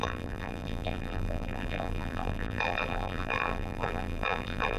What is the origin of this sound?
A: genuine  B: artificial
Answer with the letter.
B